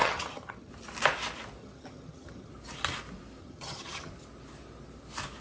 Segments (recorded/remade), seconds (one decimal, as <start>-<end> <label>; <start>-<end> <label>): 0.0-0.7 remade; 0.7-1.6 recorded; 1.6-2.5 remade; 2.5-3.4 recorded; 3.4-4.1 remade; 4.1-5.4 recorded